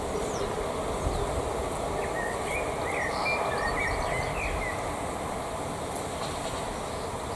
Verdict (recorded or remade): recorded